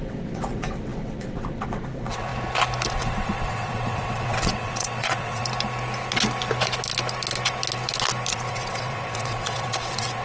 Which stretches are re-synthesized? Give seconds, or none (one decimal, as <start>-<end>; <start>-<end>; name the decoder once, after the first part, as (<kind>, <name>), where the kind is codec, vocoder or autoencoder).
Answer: 0.0-2.3 (vocoder, WaveNeXt); 2.9-5.4; 8.3-10.2